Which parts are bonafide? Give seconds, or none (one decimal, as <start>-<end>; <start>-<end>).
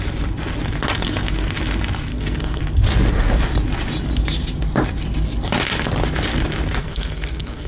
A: 0.0-2.1; 2.6-6.8